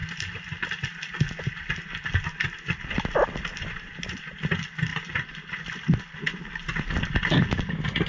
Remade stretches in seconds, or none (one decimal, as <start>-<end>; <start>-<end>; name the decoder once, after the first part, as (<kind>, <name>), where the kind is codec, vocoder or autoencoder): none